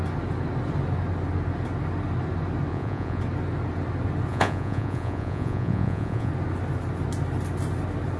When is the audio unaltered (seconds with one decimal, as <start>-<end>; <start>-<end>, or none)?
0.0-2.7; 3.2-4.3; 6.3-8.2